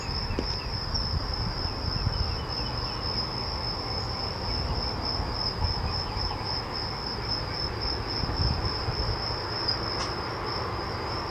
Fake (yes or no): no